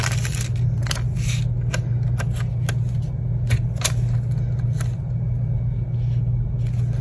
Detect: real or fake real